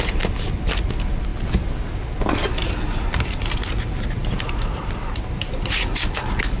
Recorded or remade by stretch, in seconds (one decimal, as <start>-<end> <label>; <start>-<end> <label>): 0.0-6.6 recorded